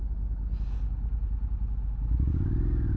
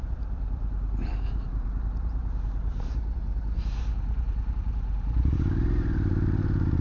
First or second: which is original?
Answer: first